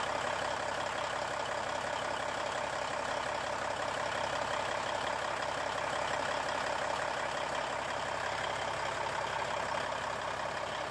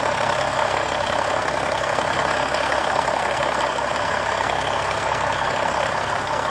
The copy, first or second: second